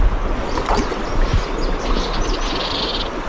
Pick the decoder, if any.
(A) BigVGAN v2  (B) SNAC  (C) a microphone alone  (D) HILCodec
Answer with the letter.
C